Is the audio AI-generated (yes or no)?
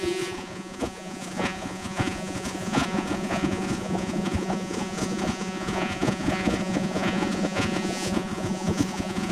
yes